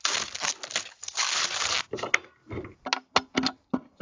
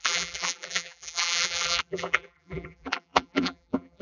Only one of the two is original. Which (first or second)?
first